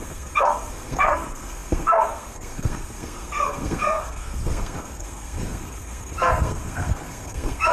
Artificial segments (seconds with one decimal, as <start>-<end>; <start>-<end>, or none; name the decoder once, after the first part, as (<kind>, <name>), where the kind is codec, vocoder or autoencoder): 0.0-7.7 (codec, SNAC)